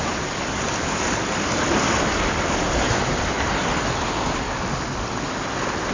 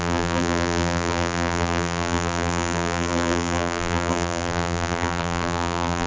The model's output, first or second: second